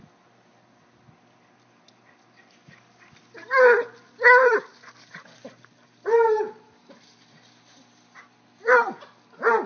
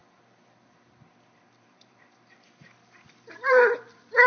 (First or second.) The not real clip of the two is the second